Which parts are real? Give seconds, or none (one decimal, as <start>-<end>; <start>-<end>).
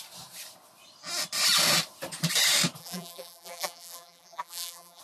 0.0-2.8